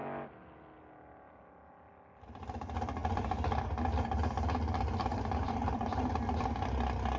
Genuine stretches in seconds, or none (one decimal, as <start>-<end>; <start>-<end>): 0.0-5.1; 6.1-7.2